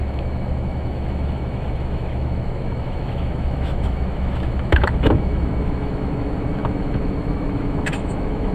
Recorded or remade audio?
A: remade